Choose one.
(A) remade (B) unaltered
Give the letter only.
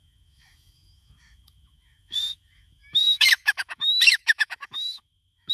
A